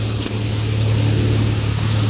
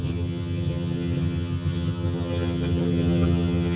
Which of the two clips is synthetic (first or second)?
second